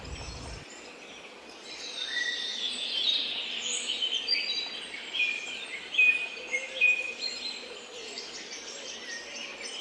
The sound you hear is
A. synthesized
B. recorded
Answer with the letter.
A